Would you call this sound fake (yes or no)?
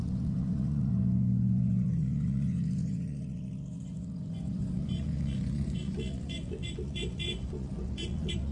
yes